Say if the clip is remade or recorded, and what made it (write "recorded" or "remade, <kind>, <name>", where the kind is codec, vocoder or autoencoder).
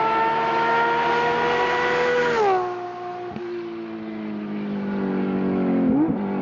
recorded